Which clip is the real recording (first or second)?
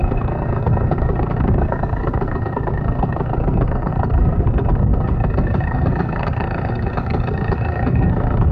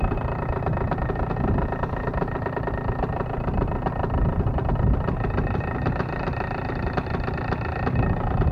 second